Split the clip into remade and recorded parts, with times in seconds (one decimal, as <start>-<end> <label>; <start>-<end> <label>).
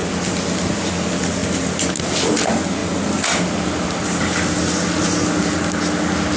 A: 0.0-6.4 recorded